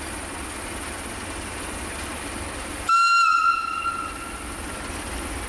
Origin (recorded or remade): recorded